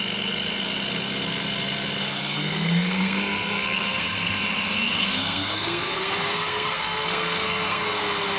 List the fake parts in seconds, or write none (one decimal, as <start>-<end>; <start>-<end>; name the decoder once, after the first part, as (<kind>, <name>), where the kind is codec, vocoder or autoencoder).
2.0-4.4 (codec, SNAC); 5.0-8.0